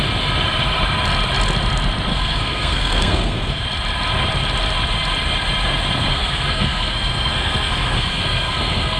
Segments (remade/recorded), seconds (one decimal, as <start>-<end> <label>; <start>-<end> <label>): 0.0-2.1 recorded; 2.1-3.6 remade; 3.6-6.1 recorded; 6.1-9.0 remade